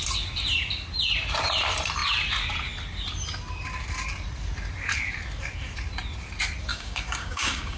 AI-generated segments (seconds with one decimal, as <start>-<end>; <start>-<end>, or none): 6.7-7.8